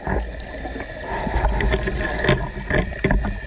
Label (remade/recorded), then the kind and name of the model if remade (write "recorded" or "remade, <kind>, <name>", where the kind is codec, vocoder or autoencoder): recorded